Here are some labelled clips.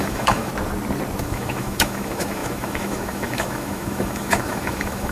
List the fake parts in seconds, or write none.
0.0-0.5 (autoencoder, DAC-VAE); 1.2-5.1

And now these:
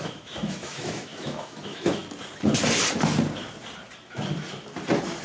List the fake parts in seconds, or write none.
0.0-2.0 (autoencoder, DAC-VAE)

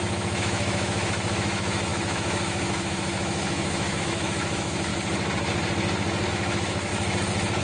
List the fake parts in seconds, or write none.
0.0-4.9 (autoencoder, DAC-VAE); 6.3-6.9

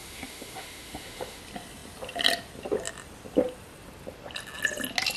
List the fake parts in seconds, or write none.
0.0-1.4 (autoencoder, DAC-VAE)

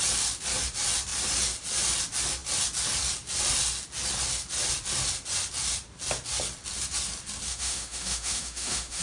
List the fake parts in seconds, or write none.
7.5-9.0 (autoencoder, DAC-VAE)